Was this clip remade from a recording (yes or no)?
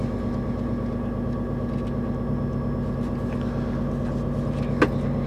no